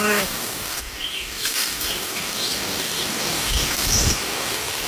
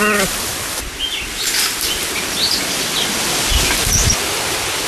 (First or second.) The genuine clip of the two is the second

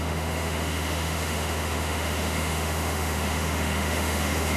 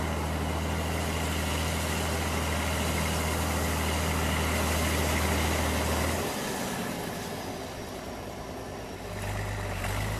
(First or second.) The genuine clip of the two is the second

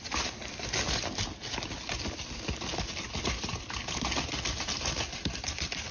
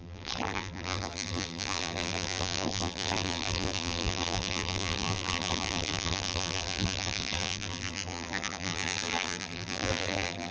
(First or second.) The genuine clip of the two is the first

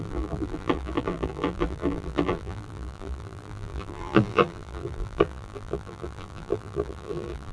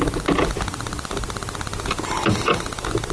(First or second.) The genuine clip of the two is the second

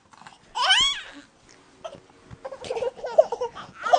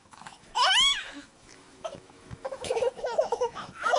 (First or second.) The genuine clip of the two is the first